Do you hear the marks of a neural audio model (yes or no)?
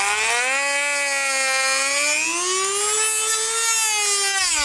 no